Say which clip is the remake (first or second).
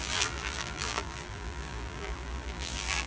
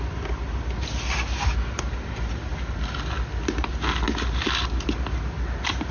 first